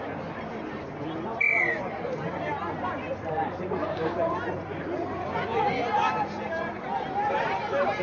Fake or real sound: fake